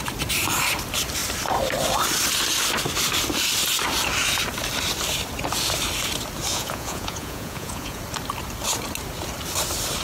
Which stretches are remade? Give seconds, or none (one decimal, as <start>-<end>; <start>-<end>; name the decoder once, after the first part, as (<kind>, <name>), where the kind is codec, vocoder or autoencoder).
6.5-8.0 (vocoder, Vocos)